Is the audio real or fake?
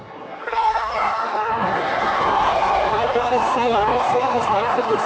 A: fake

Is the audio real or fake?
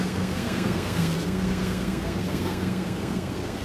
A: fake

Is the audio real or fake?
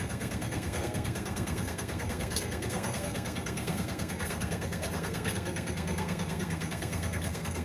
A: fake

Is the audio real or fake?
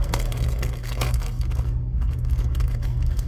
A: fake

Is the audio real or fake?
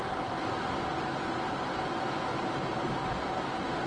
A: real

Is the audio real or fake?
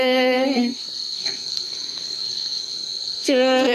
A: fake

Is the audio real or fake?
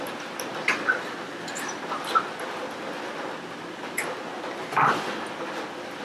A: real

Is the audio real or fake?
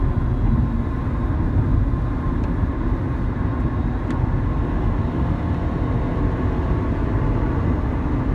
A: real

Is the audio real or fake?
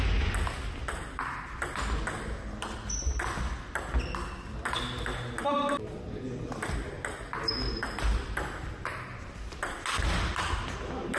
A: real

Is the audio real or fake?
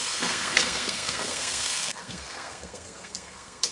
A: fake